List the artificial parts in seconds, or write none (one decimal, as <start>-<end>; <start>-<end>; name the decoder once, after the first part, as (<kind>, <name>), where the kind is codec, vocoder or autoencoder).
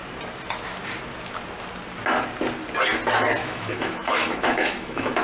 3.4-5.2 (autoencoder, DAC-VAE)